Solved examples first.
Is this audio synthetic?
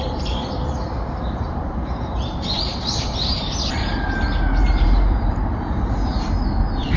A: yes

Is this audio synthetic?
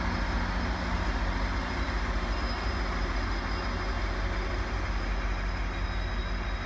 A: no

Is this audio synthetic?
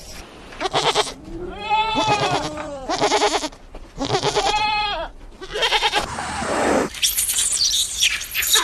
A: yes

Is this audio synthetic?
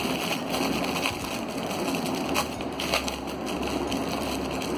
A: no